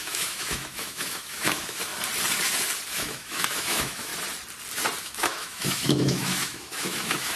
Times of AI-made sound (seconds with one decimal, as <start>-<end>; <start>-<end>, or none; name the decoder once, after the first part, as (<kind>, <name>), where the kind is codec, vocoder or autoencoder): 0.0-1.9 (autoencoder, DAC-VAE); 2.9-4.1; 5.0-7.4